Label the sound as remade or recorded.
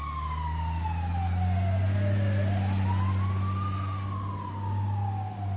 recorded